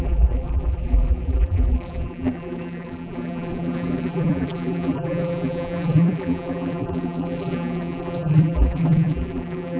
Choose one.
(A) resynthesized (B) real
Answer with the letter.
A